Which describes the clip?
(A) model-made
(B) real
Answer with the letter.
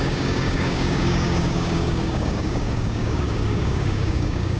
A